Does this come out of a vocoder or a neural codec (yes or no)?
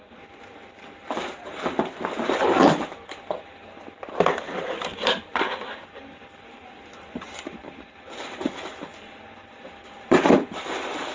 yes